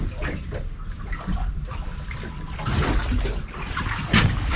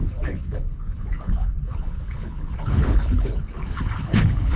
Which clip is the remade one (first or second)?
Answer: second